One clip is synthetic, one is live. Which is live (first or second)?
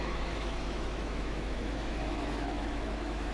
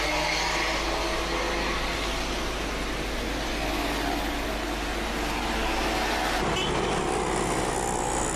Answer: second